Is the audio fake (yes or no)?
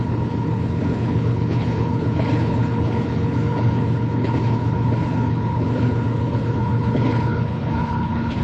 yes